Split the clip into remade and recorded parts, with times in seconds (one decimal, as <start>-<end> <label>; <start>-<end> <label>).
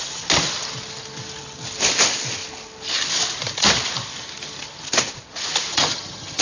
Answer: 0.0-5.7 recorded; 5.7-6.4 remade